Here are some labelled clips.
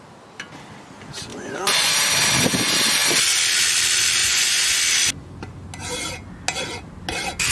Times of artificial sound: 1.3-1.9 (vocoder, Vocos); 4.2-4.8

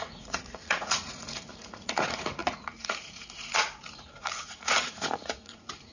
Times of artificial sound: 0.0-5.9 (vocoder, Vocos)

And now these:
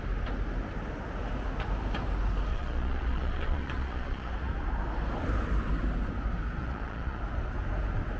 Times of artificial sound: 2.5-4.3 (vocoder, Vocos); 6.6-7.2